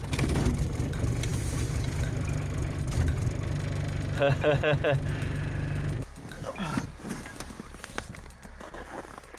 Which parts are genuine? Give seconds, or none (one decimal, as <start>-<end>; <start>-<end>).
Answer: 0.0-9.4